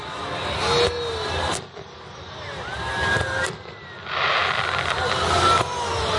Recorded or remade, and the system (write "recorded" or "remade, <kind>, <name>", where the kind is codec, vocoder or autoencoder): recorded